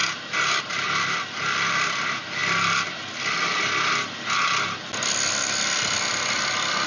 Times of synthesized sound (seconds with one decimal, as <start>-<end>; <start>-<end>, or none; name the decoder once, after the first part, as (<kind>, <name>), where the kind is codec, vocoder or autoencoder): none